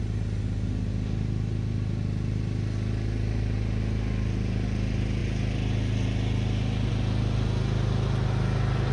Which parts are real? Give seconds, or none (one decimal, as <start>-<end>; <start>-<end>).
0.0-8.9